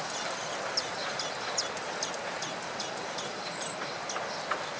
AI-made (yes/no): no